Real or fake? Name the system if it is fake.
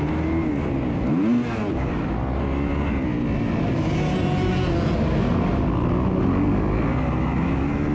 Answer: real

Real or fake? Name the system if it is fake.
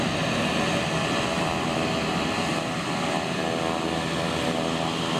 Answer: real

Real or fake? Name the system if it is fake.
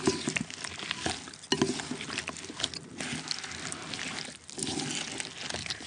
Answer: real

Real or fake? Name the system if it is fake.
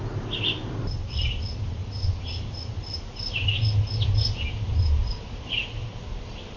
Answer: real